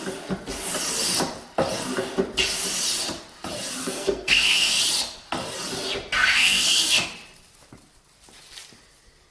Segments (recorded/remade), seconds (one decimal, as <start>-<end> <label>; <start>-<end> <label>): 0.0-3.8 recorded; 3.8-4.8 remade; 4.8-6.3 recorded; 6.3-7.1 remade; 7.1-9.3 recorded